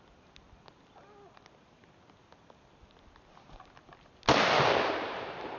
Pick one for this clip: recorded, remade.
recorded